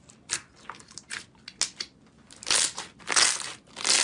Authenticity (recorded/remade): recorded